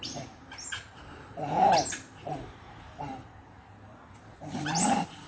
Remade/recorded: remade